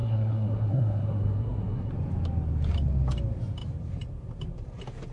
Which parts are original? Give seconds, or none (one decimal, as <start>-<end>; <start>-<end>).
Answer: 1.9-5.1